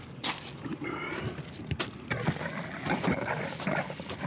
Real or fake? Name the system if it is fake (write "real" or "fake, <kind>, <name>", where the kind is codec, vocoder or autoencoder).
fake, vocoder, BigVGAN v2